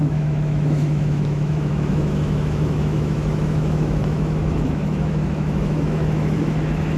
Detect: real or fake fake